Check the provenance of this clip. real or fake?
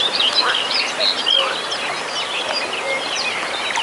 real